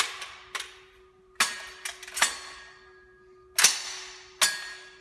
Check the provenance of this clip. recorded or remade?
recorded